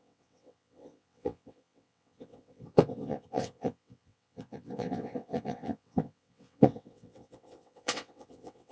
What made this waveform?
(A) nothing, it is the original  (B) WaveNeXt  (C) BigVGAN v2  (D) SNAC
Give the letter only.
B